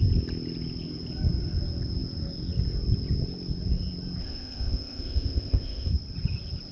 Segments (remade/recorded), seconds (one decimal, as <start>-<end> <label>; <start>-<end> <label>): 0.0-4.2 recorded; 4.2-5.9 remade; 5.9-6.7 recorded